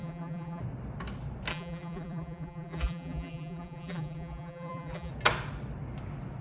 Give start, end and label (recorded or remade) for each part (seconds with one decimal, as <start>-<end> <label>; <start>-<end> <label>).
0.0-0.6 remade; 0.6-1.5 recorded; 1.5-5.1 remade; 5.1-6.4 recorded